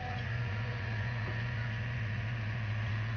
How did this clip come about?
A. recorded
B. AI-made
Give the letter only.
B